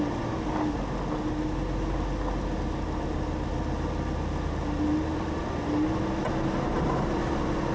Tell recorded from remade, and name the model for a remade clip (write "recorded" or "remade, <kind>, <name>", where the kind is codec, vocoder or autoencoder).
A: recorded